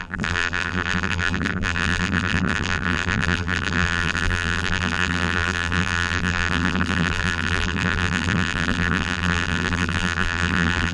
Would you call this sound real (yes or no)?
no